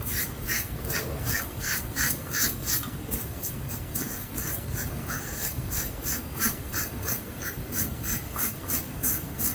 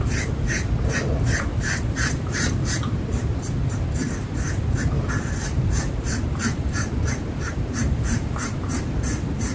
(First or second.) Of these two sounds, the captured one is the second